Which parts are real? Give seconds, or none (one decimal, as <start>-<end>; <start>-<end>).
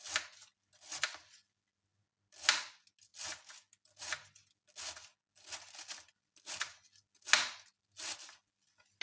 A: 0.0-9.0